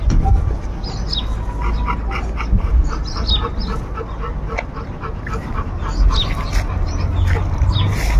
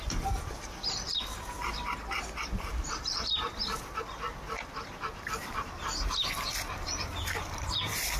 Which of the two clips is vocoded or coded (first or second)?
second